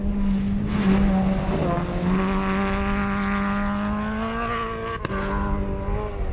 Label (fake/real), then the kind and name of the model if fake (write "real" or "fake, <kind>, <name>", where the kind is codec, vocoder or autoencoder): real